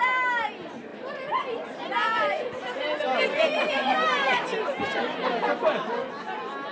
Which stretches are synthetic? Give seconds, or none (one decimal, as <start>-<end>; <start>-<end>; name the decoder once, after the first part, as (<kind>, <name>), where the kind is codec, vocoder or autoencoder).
0.9-1.7 (vocoder, BigVGAN v2)